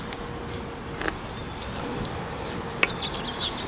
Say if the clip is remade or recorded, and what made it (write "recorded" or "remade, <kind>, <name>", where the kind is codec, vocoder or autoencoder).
recorded